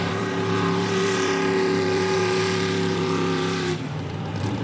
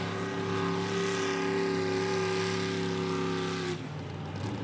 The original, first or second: second